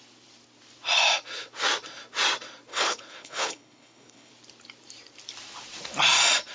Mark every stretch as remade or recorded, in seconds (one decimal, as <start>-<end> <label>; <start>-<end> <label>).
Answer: 0.0-2.7 recorded; 2.7-4.3 remade; 4.3-6.5 recorded